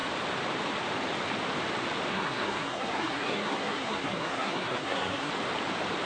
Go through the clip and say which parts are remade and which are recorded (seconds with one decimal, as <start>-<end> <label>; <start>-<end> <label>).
0.0-2.1 recorded; 2.1-5.3 remade; 5.3-6.1 recorded